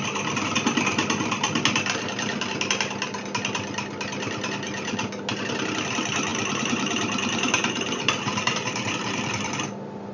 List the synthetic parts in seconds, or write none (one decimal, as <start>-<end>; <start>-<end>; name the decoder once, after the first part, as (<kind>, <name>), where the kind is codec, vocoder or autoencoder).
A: 6.3-9.5 (vocoder, BigVGAN v2)